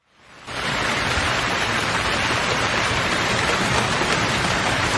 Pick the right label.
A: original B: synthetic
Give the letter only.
B